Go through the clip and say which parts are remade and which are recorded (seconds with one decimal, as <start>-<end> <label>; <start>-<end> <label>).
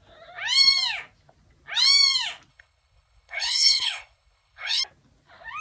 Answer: 0.0-2.5 recorded; 2.5-4.8 remade; 4.8-5.6 recorded